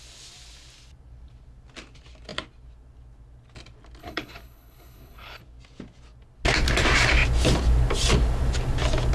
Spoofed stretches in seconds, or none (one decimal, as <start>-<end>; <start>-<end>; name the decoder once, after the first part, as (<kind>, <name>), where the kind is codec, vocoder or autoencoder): 4.0-5.4 (codec, HILCodec)